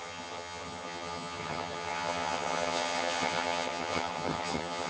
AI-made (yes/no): yes